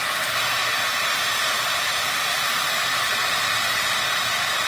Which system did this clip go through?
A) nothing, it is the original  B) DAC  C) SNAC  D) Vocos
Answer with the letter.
A